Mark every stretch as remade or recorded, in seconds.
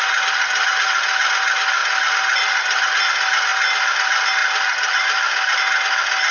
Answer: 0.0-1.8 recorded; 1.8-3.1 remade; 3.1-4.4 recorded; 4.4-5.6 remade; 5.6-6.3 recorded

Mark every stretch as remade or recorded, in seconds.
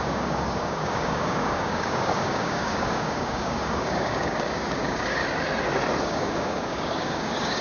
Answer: 0.0-5.2 remade; 5.2-6.0 recorded; 6.0-7.6 remade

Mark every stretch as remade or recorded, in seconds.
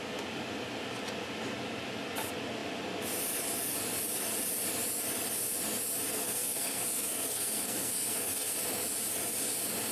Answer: 0.0-6.1 recorded; 6.1-8.6 remade; 8.6-9.9 recorded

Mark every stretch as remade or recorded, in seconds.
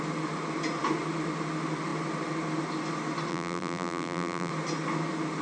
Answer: 0.0-3.3 recorded; 3.3-4.5 remade; 4.5-5.4 recorded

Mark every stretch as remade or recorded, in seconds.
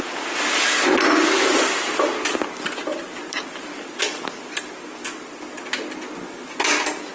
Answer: 0.0-7.1 recorded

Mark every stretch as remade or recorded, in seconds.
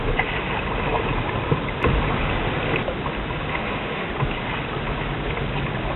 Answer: 0.0-3.5 recorded; 3.5-4.1 remade; 4.1-6.0 recorded